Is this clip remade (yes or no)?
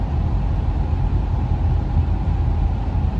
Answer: no